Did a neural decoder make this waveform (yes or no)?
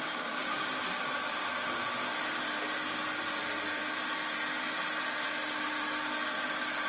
no